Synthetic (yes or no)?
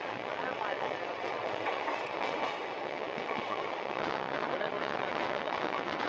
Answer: yes